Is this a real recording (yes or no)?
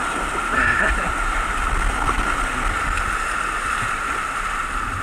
yes